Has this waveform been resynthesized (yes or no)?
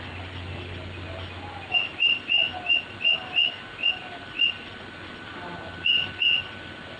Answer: no